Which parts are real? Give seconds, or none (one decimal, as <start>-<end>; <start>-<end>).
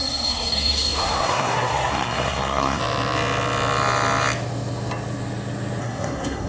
2.8-5.8